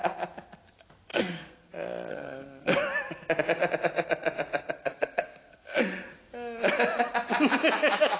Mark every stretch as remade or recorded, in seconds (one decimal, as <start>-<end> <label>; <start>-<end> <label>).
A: 0.0-1.1 recorded; 1.1-1.7 remade; 1.7-2.1 recorded; 2.1-2.8 remade; 2.8-4.8 recorded; 4.8-5.8 remade; 5.8-8.2 recorded